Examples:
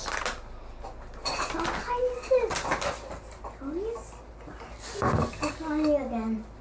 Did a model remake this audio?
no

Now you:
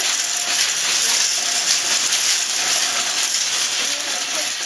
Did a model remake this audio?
no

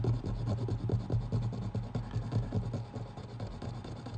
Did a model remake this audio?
no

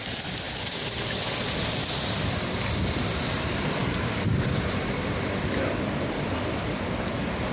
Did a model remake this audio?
yes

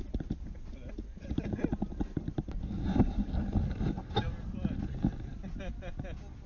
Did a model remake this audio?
no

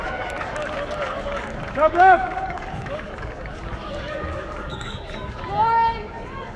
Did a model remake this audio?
yes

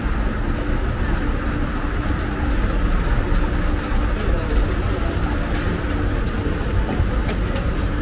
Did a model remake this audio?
no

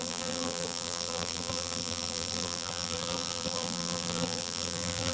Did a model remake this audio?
yes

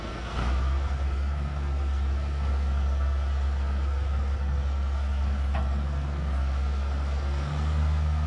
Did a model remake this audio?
yes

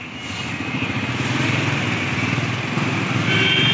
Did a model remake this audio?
no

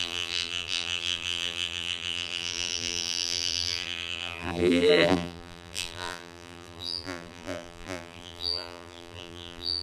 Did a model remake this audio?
yes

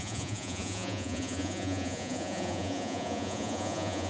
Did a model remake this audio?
yes